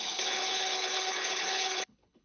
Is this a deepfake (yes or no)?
yes